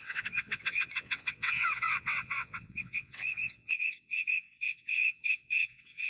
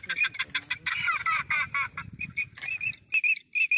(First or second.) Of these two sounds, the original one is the second